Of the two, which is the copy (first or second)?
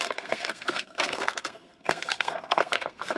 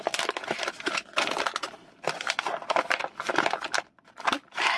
first